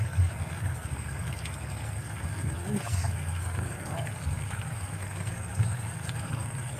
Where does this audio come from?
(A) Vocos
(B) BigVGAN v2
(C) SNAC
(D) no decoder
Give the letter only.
C